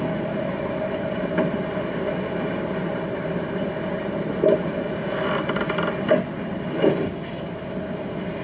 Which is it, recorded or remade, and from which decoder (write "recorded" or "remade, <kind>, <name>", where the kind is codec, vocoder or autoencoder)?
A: recorded